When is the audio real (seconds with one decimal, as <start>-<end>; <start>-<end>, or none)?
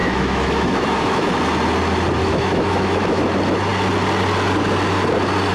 1.3-2.2; 3.2-5.5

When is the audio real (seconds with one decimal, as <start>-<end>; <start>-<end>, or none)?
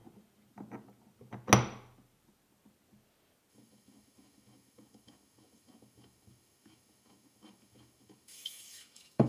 0.0-3.5